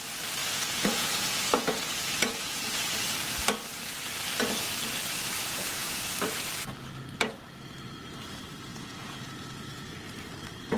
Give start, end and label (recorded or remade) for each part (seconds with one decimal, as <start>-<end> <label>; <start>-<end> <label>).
0.0-0.4 recorded; 0.4-2.9 remade; 2.9-5.4 recorded; 5.4-6.1 remade; 6.1-8.7 recorded; 8.7-9.9 remade; 9.9-10.8 recorded